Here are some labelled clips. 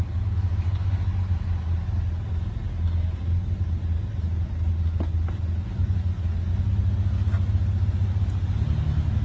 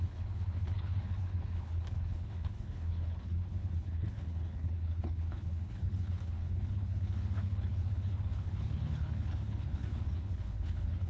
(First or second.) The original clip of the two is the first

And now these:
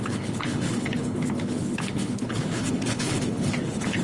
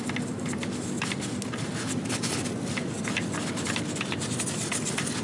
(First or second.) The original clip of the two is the second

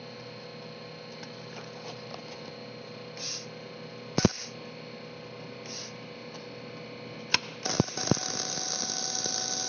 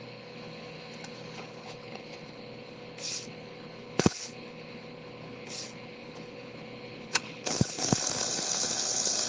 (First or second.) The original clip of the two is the first